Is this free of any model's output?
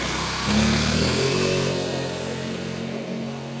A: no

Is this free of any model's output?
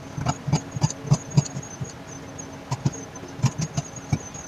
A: yes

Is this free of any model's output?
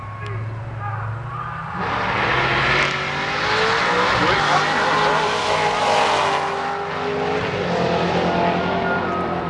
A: yes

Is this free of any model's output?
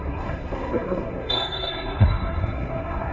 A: no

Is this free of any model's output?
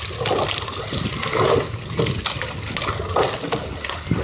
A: yes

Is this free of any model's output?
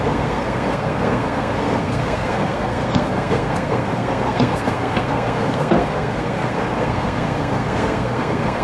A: no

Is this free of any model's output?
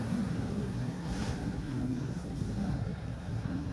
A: no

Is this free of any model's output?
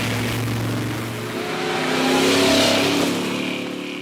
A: yes